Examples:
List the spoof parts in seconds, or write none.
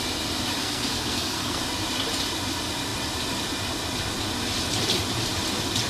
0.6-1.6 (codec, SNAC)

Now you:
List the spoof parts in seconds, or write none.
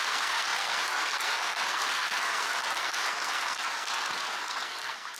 0.0-5.2 (codec, SNAC)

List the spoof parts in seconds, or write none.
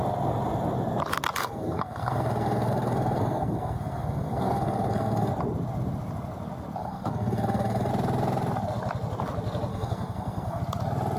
1.4-5.3 (codec, SNAC); 6.8-7.9; 9.7-10.6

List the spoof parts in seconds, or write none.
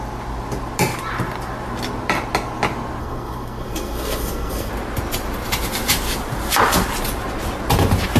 3.0-4.7 (codec, SNAC)